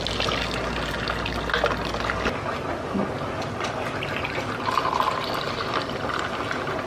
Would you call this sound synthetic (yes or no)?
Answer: no